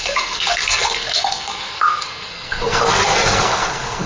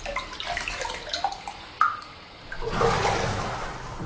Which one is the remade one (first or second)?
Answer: first